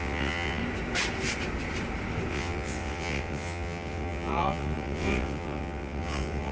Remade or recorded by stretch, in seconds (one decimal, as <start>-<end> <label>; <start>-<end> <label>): 0.0-0.6 remade; 0.6-2.3 recorded; 2.3-6.5 remade